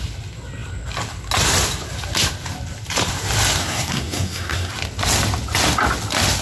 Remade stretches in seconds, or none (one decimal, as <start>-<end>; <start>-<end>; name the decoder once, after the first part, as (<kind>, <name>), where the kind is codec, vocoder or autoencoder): 3.6-4.7 (codec, SNAC)